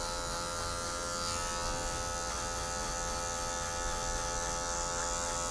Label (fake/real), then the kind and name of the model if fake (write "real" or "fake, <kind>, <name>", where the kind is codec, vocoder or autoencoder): real